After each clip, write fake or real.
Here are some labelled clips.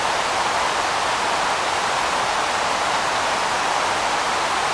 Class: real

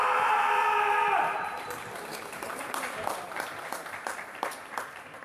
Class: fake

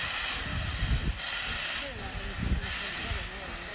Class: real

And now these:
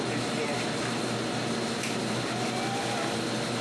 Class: real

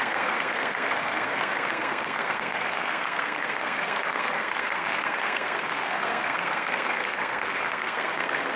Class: fake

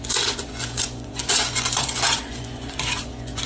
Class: fake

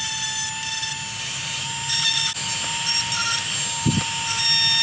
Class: real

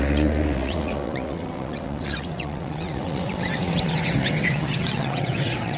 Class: fake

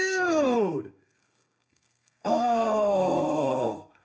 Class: fake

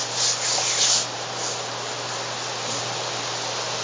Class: real